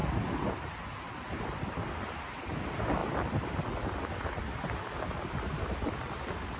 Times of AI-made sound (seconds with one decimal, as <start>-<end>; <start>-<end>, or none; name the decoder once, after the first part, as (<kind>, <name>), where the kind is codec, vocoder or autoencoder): none